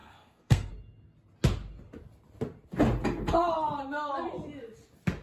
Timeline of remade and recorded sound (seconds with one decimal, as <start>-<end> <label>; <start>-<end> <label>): 0.0-0.7 remade; 0.7-5.2 recorded